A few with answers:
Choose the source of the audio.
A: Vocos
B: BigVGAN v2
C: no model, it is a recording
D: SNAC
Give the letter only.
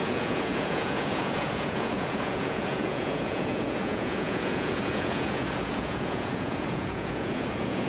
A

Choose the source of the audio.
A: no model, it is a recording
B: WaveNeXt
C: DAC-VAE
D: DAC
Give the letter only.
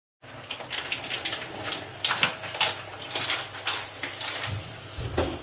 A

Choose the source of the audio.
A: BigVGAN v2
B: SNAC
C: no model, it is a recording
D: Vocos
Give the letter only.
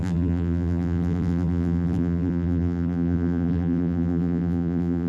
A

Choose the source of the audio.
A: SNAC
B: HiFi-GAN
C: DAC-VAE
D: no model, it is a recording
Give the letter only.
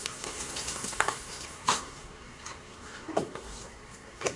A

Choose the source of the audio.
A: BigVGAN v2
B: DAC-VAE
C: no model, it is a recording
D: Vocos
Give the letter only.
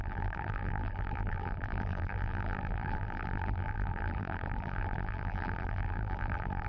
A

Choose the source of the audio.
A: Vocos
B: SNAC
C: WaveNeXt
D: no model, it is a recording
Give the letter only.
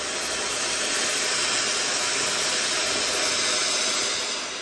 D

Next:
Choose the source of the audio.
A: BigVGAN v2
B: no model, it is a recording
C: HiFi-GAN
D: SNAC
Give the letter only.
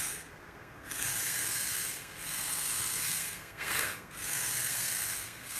D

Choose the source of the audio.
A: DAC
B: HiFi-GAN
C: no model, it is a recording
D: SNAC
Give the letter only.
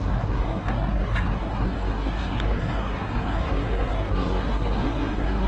D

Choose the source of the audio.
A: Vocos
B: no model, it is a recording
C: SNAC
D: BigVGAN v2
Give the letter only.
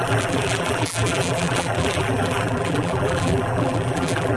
D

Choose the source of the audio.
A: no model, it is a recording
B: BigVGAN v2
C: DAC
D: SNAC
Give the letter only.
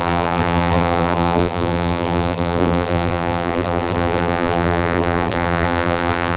B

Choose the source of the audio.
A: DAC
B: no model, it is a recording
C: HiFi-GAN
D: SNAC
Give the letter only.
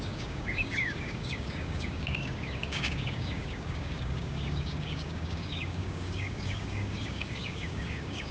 A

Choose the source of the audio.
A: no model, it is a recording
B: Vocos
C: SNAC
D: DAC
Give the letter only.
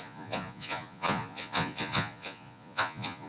B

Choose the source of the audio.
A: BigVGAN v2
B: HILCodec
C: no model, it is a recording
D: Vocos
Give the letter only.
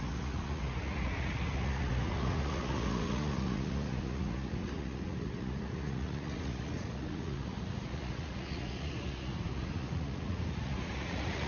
D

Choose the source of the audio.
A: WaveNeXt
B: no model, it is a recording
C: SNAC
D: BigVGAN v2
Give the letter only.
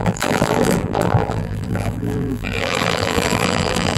D